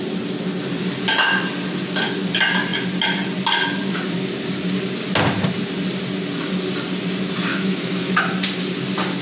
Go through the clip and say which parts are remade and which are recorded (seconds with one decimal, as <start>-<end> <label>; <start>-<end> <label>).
0.0-7.5 recorded; 7.5-8.2 remade; 8.2-9.2 recorded